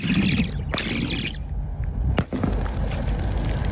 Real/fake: real